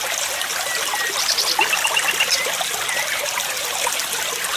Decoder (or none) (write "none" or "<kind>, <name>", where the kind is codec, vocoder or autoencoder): none